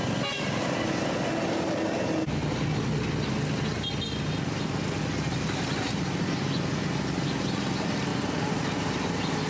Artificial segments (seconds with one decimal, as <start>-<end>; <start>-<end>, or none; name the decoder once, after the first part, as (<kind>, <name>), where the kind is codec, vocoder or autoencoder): none